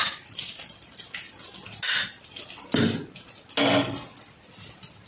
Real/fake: real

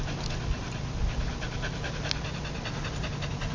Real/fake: real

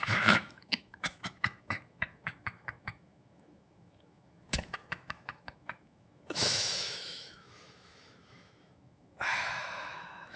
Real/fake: fake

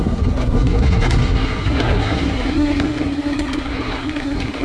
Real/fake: fake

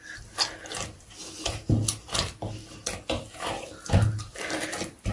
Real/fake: real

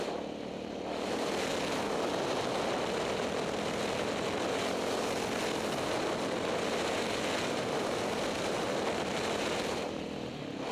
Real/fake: real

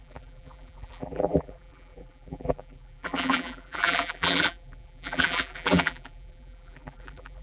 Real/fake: fake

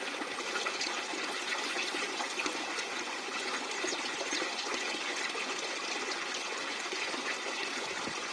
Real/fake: fake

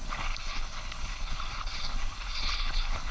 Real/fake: fake